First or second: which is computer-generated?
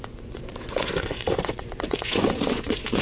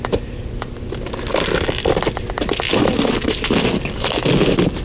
first